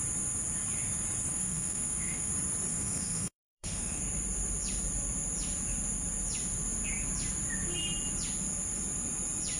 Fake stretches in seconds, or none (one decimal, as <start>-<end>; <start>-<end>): 1.3-2.3; 2.7-4.0